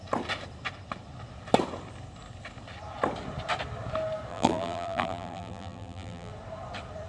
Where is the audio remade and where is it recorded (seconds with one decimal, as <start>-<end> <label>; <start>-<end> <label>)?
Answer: 0.0-4.3 recorded; 4.3-6.3 remade; 6.3-7.1 recorded